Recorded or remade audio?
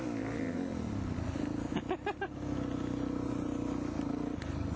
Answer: recorded